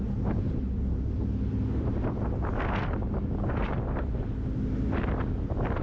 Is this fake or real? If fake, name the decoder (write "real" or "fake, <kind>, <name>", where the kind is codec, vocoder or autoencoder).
real